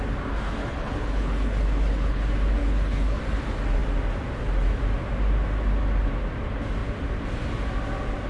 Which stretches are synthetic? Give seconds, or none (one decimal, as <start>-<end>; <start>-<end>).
0.6-2.2; 2.6-3.2